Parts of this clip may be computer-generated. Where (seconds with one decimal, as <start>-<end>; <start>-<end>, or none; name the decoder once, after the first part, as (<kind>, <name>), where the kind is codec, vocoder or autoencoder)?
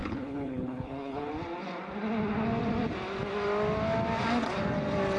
0.0-1.3 (codec, HILCodec)